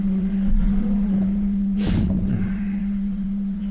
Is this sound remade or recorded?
remade